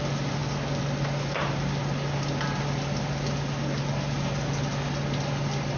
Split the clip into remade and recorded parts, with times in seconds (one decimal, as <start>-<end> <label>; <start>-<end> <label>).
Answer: 0.0-5.8 recorded